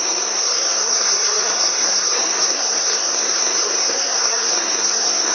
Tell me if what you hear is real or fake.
fake